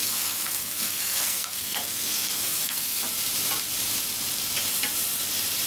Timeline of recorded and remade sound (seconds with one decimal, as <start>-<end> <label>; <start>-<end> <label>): 0.0-3.0 remade; 3.0-5.7 recorded